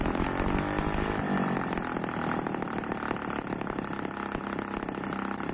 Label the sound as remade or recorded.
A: recorded